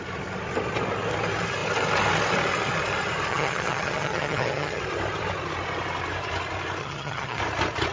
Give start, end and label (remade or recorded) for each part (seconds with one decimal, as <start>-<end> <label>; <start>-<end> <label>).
0.0-3.3 recorded; 3.3-4.8 remade; 4.8-6.8 recorded; 6.8-7.4 remade; 7.4-7.9 recorded